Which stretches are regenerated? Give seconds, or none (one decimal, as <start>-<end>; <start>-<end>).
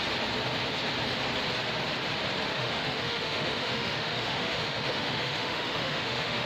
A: 2.5-6.5